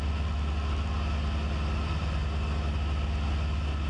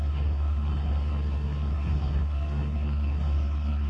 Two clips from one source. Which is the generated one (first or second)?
second